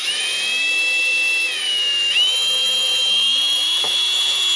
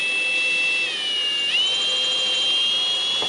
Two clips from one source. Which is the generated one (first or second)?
first